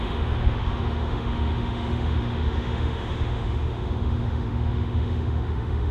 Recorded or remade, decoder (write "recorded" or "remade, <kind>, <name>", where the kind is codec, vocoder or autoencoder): remade, autoencoder, DAC-VAE